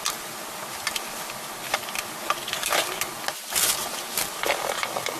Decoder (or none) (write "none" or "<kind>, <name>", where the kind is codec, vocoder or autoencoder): none